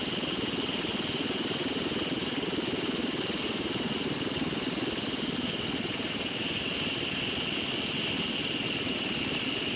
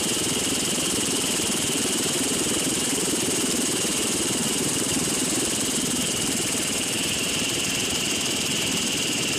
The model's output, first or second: second